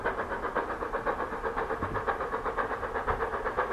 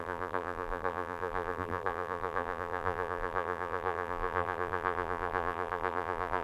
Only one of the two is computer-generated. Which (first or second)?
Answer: second